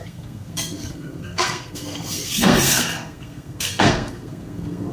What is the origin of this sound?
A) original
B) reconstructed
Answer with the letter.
B